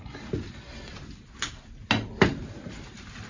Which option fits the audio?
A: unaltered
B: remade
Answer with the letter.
A